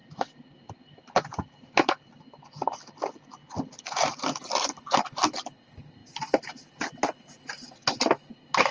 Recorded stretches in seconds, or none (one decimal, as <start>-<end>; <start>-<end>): 1.9-8.7